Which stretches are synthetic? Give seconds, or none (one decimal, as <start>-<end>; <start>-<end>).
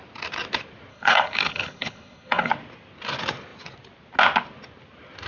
0.9-2.5